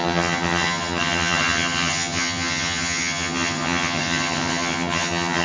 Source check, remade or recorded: remade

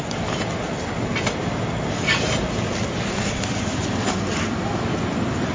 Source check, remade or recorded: remade